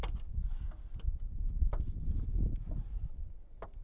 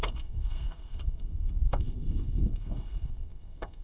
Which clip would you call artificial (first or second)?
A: second